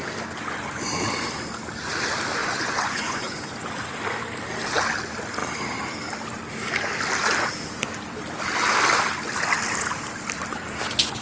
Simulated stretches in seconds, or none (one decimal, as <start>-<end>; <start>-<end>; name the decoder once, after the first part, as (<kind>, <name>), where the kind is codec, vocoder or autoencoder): 2.4-3.5 (vocoder, Vocos)